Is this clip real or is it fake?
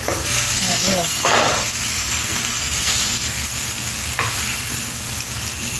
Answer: fake